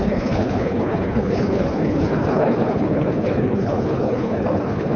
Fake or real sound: fake